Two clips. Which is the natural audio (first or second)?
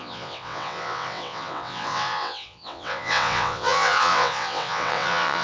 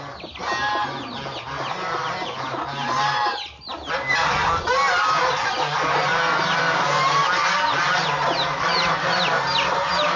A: second